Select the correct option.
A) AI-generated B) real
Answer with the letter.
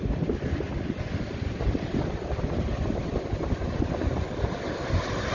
B